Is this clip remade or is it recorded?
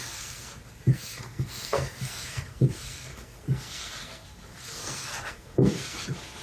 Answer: remade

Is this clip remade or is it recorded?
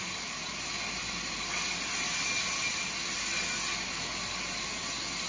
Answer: recorded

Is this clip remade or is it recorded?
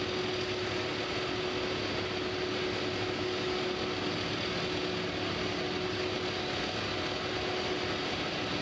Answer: recorded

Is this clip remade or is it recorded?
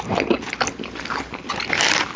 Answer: recorded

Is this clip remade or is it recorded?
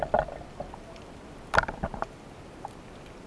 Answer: recorded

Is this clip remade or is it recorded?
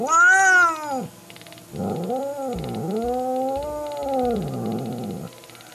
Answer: recorded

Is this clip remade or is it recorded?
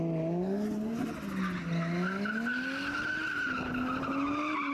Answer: recorded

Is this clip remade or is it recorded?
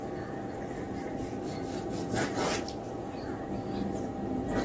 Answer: recorded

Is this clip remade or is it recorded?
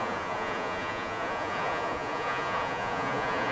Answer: remade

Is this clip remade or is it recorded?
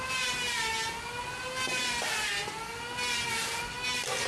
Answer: recorded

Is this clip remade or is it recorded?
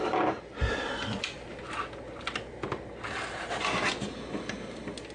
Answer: recorded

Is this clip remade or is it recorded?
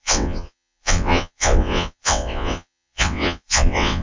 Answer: remade